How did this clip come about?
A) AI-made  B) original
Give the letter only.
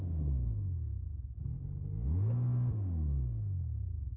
B